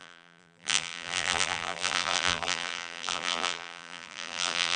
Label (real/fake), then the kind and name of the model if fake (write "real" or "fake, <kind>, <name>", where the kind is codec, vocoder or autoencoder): fake, vocoder, BigVGAN v2